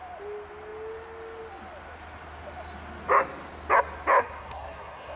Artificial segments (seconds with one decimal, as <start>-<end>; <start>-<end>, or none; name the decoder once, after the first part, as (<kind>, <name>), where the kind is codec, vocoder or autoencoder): 4.2-5.2 (codec, SNAC)